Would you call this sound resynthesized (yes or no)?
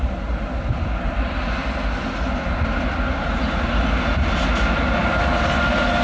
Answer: no